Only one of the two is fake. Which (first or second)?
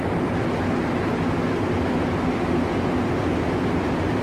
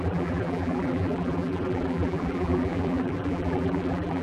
second